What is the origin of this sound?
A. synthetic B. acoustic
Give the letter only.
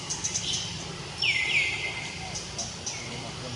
B